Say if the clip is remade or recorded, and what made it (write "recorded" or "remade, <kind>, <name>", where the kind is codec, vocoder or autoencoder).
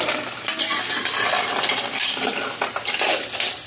recorded